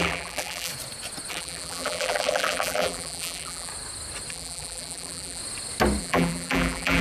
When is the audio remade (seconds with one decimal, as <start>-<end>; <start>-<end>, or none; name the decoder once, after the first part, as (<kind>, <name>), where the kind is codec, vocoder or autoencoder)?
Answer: 0.0-0.7 (vocoder, BigVGAN v2); 1.3-3.7; 4.3-5.4; 6.0-7.0